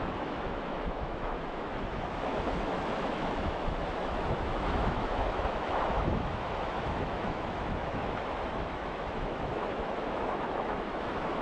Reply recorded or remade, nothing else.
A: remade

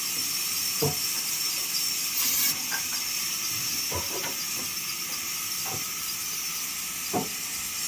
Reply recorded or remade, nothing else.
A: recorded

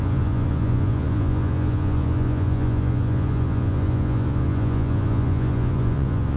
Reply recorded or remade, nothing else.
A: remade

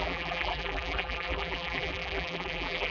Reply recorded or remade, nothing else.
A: remade